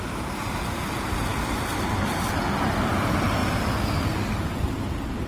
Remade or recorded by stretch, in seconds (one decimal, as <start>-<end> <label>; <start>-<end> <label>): 0.0-5.3 recorded